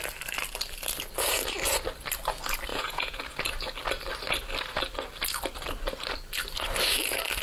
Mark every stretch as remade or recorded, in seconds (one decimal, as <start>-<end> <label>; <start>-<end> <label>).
0.0-2.7 recorded; 2.7-3.2 remade; 3.2-7.4 recorded